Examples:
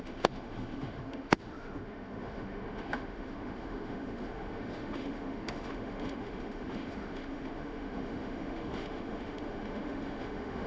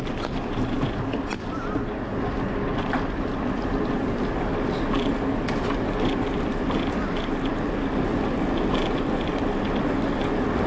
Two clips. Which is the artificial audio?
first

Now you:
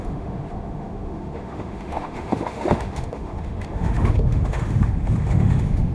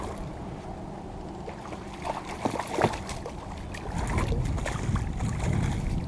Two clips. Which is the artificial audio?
first